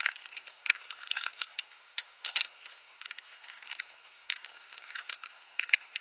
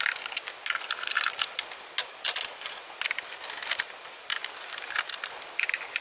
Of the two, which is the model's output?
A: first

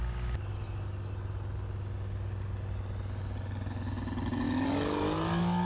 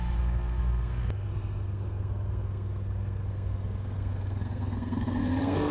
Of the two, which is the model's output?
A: second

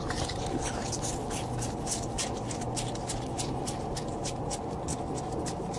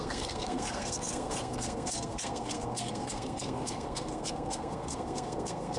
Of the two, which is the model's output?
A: second